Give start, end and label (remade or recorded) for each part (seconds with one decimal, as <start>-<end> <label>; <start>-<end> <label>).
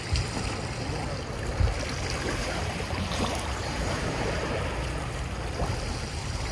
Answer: 0.0-2.4 recorded; 2.4-4.5 remade; 4.5-6.5 recorded